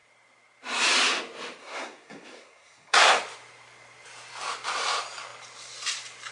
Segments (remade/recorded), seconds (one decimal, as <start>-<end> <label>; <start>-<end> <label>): 0.0-1.6 recorded; 1.6-3.1 remade; 3.1-6.3 recorded